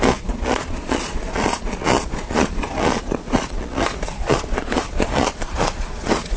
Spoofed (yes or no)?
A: yes